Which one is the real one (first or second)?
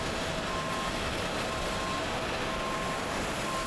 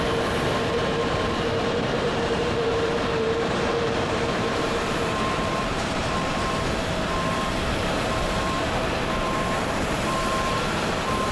first